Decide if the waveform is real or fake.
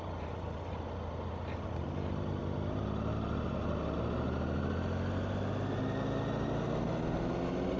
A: real